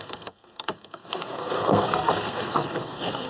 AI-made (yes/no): yes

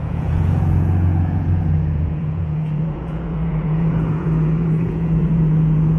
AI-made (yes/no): yes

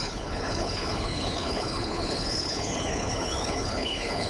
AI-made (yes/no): yes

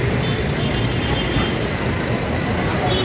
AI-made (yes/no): no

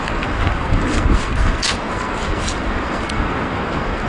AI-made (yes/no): yes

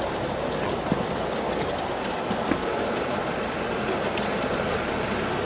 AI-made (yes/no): no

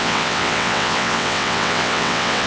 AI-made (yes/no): yes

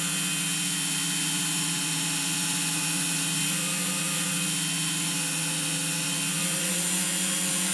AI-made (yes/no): yes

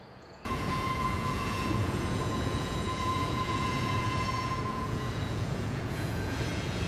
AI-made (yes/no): yes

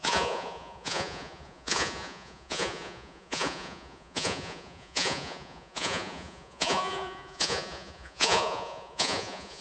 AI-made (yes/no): yes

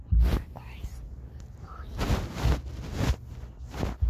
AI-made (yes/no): no